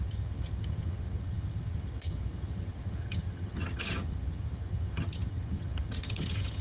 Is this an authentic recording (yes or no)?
no